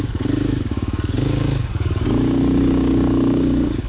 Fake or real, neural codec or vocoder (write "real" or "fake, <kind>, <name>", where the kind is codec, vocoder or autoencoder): fake, codec, DAC